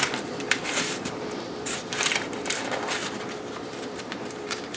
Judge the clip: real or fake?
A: fake